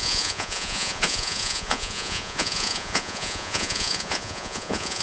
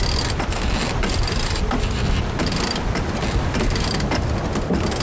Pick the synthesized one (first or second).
first